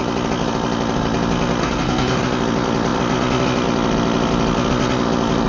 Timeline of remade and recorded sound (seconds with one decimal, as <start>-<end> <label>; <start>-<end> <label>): 0.0-1.6 recorded; 1.6-2.2 remade; 2.2-5.5 recorded